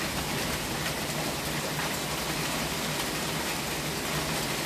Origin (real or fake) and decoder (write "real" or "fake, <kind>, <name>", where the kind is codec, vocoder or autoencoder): real